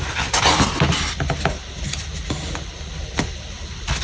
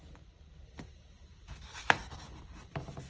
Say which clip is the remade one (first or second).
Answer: second